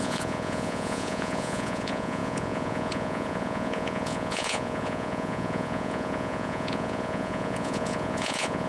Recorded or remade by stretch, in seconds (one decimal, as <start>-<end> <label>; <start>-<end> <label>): 0.0-8.7 remade